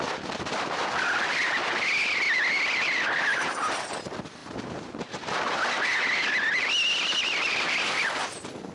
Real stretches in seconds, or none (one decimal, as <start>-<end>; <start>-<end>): 0.0-8.7